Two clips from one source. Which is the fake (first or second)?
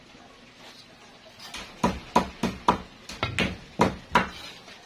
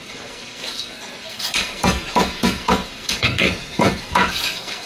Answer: second